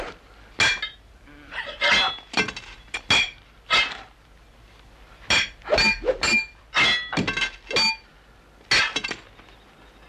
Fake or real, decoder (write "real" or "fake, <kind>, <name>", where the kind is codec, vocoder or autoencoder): real